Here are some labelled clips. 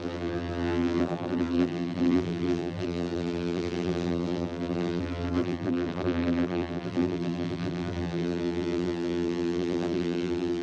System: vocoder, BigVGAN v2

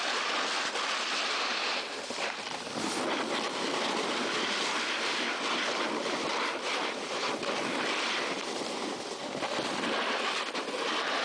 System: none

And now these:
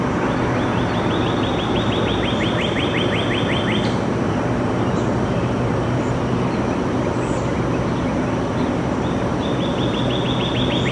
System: none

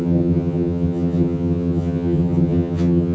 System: vocoder, HiFi-GAN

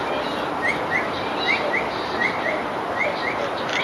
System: none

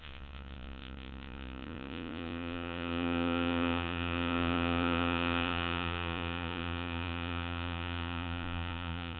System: vocoder, Vocos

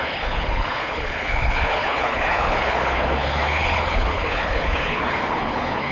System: codec, HILCodec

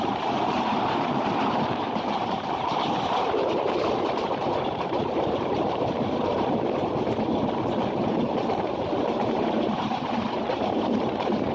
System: vocoder, BigVGAN v2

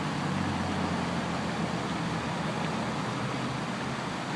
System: none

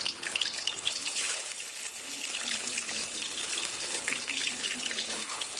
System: codec, HILCodec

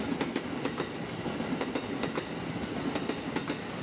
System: none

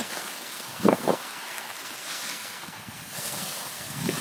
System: codec, SNAC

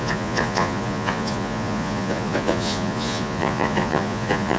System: vocoder, Vocos